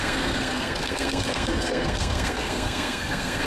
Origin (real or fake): fake